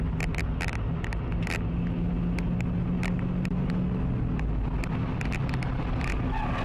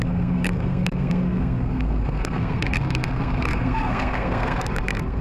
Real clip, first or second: first